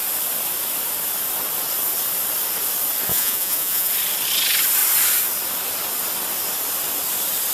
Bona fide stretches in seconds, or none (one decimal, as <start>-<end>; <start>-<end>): 0.0-3.1; 3.9-7.5